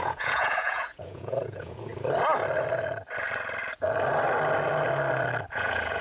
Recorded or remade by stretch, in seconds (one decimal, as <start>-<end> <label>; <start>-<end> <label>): 0.0-1.9 remade; 1.9-5.5 recorded; 5.5-6.0 remade